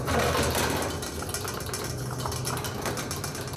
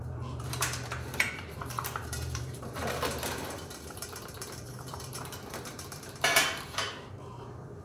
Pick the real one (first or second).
first